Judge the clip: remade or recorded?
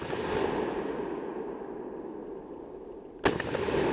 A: recorded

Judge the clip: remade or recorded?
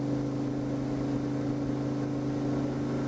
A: recorded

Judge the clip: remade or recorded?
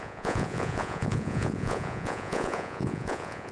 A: remade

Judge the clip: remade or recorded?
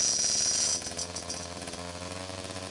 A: remade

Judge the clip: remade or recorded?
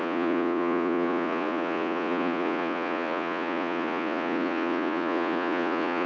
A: remade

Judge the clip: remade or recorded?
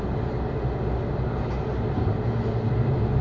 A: recorded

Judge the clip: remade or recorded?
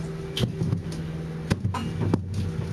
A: recorded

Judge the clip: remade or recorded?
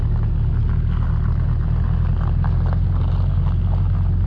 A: recorded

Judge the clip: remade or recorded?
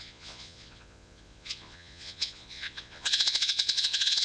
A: remade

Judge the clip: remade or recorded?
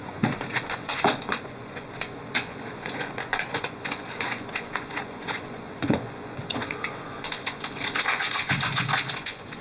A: remade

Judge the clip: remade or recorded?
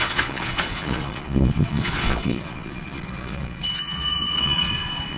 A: remade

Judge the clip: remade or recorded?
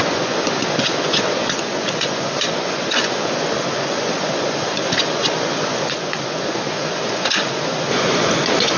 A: remade